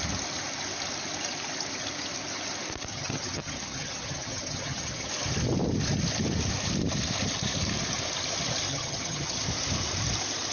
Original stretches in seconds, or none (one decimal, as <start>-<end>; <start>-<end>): 0.0-2.9; 5.1-8.7; 9.4-10.5